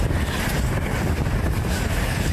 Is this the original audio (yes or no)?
yes